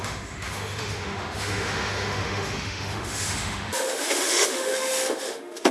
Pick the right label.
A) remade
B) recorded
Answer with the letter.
A